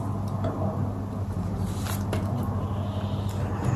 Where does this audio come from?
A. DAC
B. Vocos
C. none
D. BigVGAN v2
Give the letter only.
C